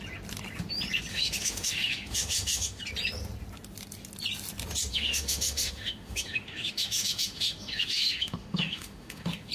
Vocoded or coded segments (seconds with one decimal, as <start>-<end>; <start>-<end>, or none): 1.1-2.8; 4.9-9.5